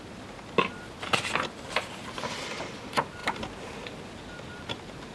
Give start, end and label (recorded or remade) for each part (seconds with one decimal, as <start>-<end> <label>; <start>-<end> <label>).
0.0-5.1 recorded